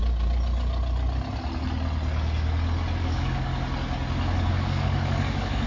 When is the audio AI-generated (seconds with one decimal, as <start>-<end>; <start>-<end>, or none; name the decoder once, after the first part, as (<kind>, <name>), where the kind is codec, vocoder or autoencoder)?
3.0-3.5 (codec, DAC); 4.5-5.7